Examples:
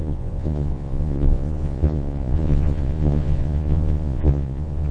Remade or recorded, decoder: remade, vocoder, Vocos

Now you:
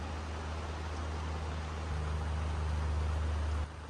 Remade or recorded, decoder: recorded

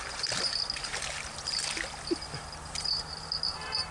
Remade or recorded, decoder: recorded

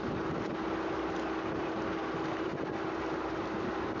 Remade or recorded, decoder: recorded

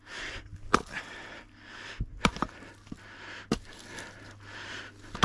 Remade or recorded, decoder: recorded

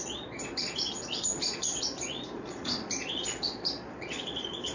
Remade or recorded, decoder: remade, vocoder, Vocos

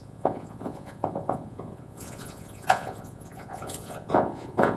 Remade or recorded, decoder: remade, vocoder, Vocos